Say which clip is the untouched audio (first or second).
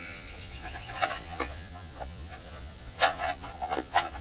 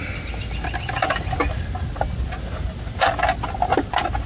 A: second